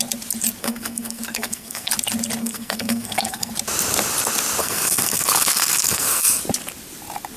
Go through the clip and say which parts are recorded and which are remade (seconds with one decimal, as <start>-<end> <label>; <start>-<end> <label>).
0.0-0.6 recorded; 0.6-1.9 remade; 1.9-2.4 recorded; 2.4-3.5 remade; 3.5-4.6 recorded; 4.6-6.4 remade; 6.4-7.4 recorded